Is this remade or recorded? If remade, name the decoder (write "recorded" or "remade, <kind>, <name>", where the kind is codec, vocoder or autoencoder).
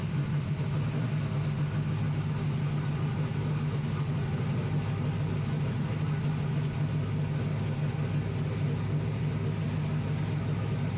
recorded